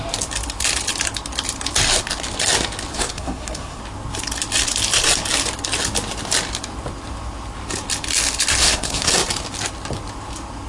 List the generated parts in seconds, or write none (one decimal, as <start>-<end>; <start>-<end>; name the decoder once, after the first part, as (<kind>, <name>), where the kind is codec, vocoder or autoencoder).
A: 2.9-3.8 (codec, SNAC); 8.6-9.1